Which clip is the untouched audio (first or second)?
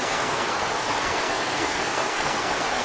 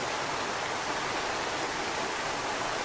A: second